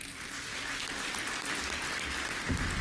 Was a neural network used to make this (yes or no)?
no